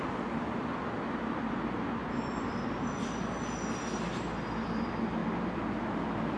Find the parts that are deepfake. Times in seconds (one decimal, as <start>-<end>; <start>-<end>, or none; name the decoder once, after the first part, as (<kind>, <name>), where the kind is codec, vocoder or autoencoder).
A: none